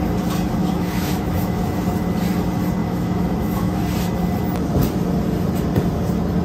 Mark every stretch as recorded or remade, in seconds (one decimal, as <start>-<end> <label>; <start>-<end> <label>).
0.0-0.6 recorded; 0.6-1.6 remade; 1.6-2.8 recorded; 2.8-3.8 remade; 3.8-6.4 recorded